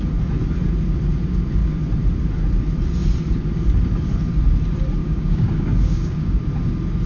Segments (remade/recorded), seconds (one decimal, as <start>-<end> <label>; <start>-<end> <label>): 0.0-5.0 recorded; 5.0-6.4 remade; 6.4-7.1 recorded